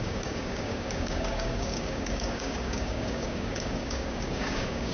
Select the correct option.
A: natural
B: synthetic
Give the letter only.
B